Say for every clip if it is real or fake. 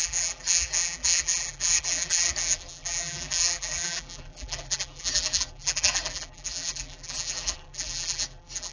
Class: fake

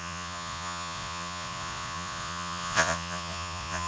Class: fake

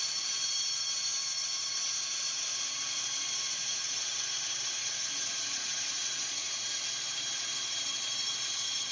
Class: fake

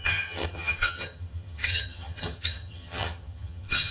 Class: fake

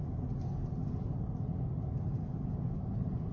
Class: real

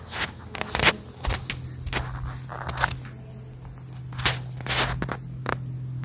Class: real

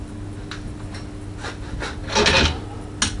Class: real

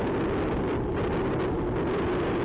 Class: real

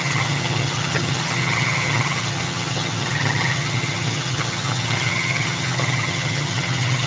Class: fake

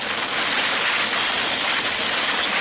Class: real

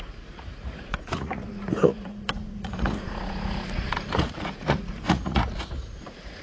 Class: fake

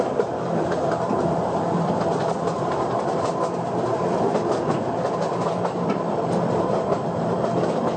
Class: fake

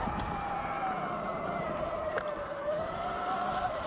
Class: real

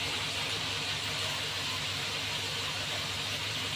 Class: fake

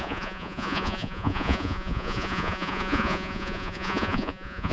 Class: fake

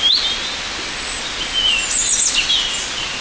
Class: real